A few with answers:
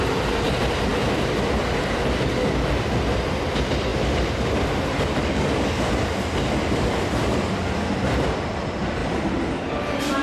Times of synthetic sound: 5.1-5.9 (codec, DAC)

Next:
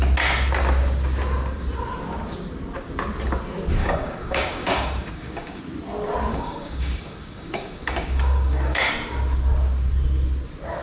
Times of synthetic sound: 3.8-5.6 (codec, DAC); 6.3-8.9

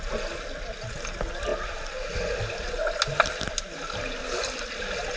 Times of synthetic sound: none

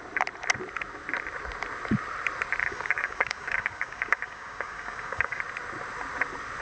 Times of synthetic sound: 2.6-5.4 (codec, DAC)

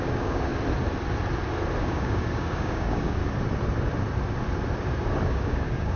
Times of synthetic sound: 0.0-0.5 (codec, DAC); 1.8-3.2; 5.3-6.0

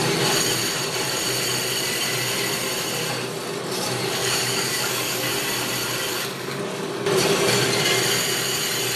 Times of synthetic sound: 4.2-5.3 (codec, DAC); 6.1-6.6

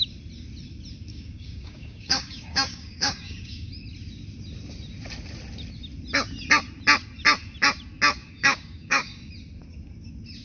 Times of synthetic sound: 1.1-3.7 (codec, DAC); 8.2-9.3

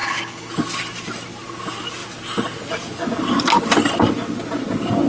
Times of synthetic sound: 0.0-0.5 (codec, DAC)